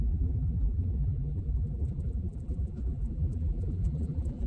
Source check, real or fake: fake